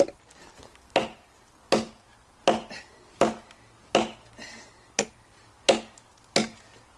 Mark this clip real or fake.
real